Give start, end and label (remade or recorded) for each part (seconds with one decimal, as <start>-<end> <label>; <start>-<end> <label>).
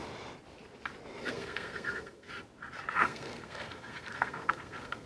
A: 0.0-1.2 recorded; 1.2-2.3 remade; 2.3-3.0 recorded; 3.0-5.1 remade